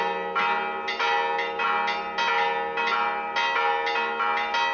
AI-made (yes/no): no